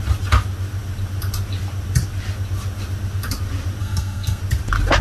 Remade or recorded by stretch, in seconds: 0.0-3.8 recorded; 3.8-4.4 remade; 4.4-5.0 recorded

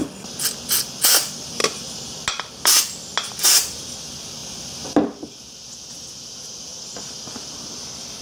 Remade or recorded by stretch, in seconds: 0.0-8.2 recorded

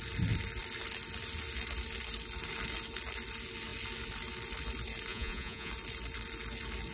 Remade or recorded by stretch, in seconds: 0.0-5.1 recorded; 5.1-5.7 remade; 5.7-6.9 recorded

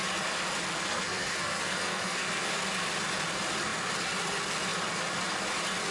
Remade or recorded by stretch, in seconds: 0.0-0.7 recorded; 0.7-2.5 remade; 2.5-5.9 recorded

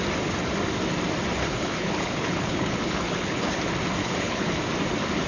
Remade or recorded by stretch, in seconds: 0.0-1.4 recorded; 1.4-3.6 remade; 3.6-4.0 recorded; 4.0-4.5 remade; 4.5-5.3 recorded

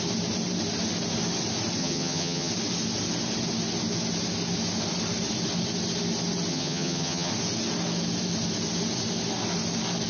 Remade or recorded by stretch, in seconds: 0.0-1.8 recorded; 1.8-2.5 remade; 2.5-6.5 recorded; 6.5-7.3 remade; 7.3-10.1 recorded

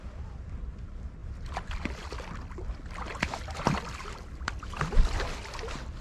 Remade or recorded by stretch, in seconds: 0.0-6.0 recorded

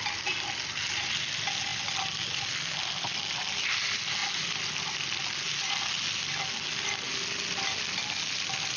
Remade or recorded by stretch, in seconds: 0.0-8.8 recorded